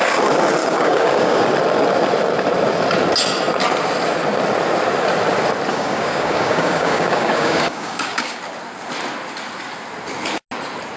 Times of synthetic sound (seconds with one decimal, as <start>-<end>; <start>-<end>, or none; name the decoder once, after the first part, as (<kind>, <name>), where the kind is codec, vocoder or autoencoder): 0.6-1.5 (codec, DAC); 5.7-8.4